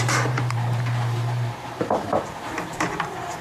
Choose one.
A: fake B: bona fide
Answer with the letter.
A